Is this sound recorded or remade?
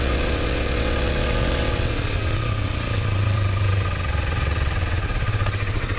remade